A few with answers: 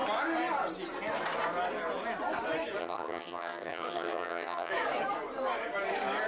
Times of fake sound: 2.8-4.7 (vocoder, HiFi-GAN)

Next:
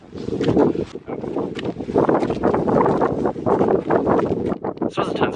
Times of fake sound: none

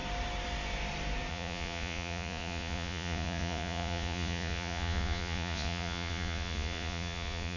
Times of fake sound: 1.3-7.6 (vocoder, Vocos)

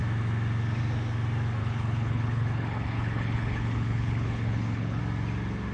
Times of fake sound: 1.6-5.0 (codec, HILCodec)

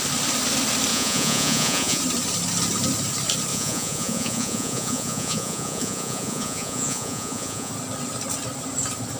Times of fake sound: 0.9-2.0 (vocoder, Vocos); 3.5-7.7